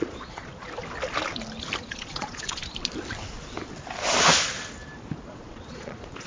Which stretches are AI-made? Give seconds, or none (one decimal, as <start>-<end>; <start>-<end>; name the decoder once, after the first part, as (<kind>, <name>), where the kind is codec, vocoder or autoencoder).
0.0-0.5 (vocoder, Vocos); 1.8-2.6; 5.3-6.3